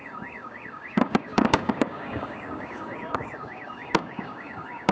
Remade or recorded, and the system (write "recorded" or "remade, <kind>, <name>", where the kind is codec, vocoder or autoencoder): remade, codec, DAC